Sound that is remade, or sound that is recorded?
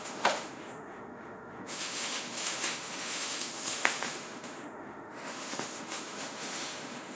remade